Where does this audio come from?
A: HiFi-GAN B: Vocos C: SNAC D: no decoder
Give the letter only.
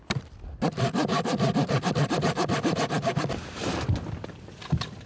D